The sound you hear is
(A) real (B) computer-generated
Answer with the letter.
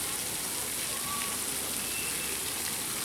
A